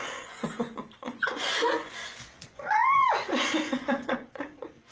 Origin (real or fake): fake